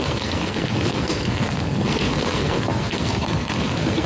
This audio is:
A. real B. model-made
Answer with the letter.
B